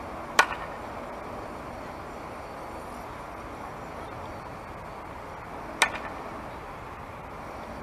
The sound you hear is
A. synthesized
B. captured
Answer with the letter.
B